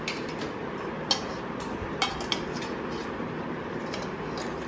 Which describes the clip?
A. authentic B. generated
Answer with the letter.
A